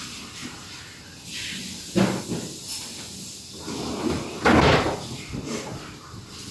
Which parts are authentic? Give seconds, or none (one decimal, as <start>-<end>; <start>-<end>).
0.0-6.5